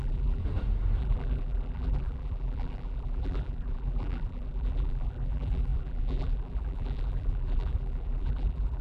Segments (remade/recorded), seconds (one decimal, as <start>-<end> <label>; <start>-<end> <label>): 0.0-0.4 remade; 0.4-1.0 recorded; 1.0-8.8 remade